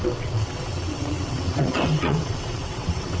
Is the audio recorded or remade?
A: remade